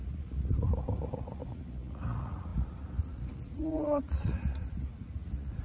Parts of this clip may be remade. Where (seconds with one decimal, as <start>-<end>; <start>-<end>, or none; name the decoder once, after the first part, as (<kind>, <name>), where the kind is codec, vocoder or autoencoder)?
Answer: 0.0-5.6 (vocoder, Vocos)